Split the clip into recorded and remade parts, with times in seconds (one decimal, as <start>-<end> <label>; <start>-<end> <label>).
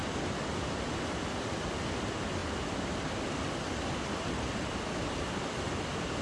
0.0-6.2 recorded